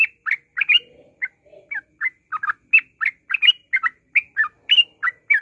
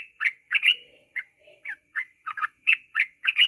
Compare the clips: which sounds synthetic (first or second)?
second